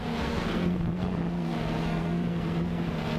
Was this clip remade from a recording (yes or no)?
yes